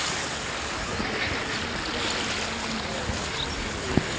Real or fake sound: real